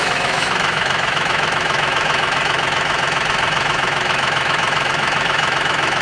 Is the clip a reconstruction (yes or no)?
yes